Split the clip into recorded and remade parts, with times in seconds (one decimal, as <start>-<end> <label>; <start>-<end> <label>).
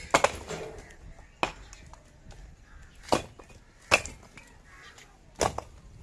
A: 0.0-2.4 recorded; 2.4-3.0 remade; 3.0-6.0 recorded